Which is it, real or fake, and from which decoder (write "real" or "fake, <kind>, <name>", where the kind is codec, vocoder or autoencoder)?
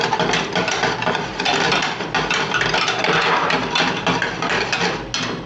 real